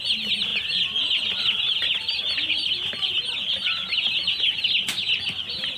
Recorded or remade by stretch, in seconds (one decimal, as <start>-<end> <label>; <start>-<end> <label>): 0.0-5.8 recorded